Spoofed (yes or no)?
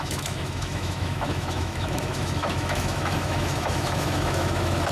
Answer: yes